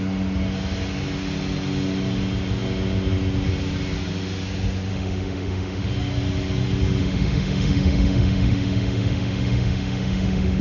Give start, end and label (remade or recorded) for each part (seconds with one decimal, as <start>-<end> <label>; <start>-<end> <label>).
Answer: 0.0-4.9 recorded; 4.9-5.9 remade; 5.9-7.0 recorded; 7.0-10.6 remade